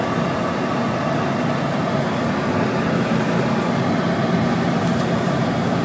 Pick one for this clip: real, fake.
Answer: real